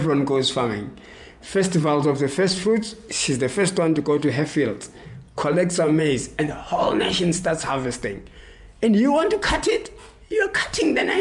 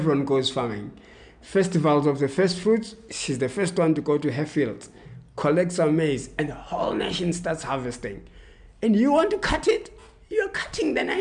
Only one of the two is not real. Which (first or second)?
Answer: first